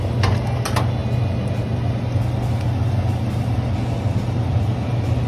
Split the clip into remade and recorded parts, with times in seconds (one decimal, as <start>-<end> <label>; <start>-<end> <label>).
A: 0.0-5.3 recorded